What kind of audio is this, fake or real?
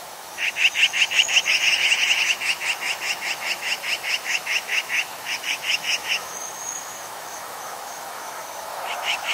fake